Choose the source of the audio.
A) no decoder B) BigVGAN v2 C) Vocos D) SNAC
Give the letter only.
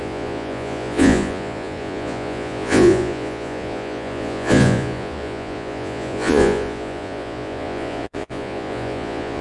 C